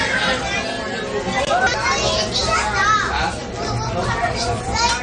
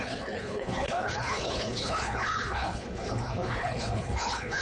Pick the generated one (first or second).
second